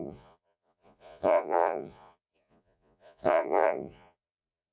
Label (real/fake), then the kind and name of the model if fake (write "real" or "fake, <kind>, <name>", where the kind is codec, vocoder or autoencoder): fake, vocoder, Vocos